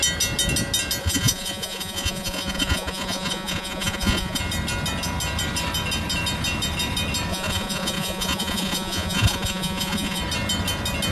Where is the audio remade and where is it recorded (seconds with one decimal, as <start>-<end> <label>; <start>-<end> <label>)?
0.0-1.0 recorded; 1.0-4.4 remade; 4.4-7.3 recorded; 7.3-10.2 remade; 10.2-11.1 recorded